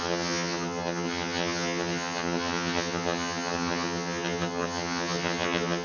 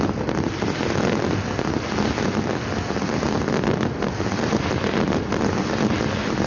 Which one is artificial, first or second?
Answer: first